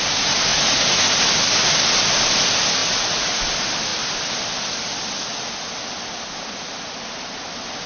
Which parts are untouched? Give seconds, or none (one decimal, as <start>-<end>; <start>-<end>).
0.0-0.5; 1.1-2.8; 3.4-7.9